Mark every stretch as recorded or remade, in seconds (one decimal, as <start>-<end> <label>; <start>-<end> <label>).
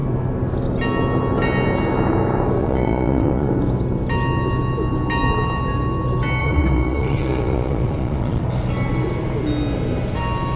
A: 0.0-2.6 recorded; 2.6-3.5 remade; 3.5-6.4 recorded; 6.4-8.4 remade; 8.4-10.6 recorded